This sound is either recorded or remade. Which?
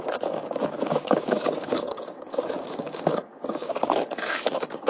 remade